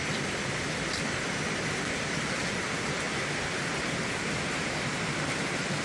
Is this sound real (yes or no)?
yes